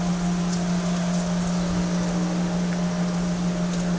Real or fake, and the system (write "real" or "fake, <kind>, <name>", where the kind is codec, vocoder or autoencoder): real